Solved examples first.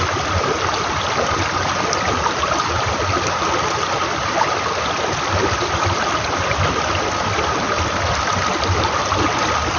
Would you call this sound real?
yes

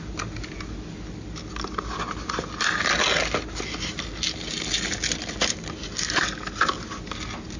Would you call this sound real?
yes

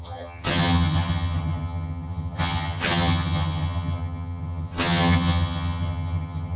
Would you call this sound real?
no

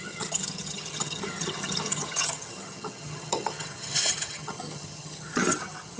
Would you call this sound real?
no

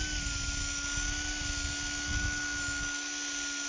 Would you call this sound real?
yes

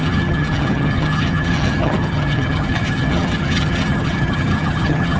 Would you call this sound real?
no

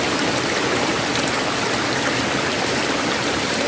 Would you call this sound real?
yes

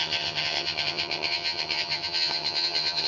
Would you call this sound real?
no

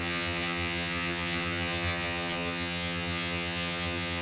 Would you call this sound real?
no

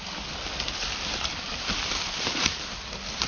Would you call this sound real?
yes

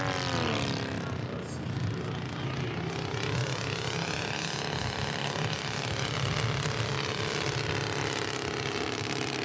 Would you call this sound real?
yes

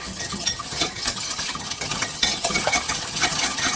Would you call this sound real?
no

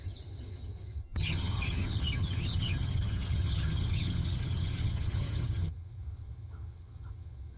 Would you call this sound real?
no